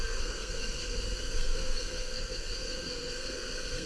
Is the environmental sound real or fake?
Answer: fake